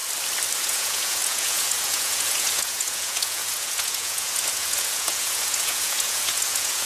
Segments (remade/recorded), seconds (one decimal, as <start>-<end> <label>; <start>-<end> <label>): 0.0-0.6 recorded; 0.6-6.9 remade